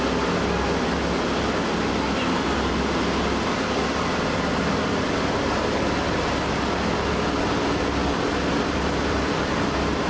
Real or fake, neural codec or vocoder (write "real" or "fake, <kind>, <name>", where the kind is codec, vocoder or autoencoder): real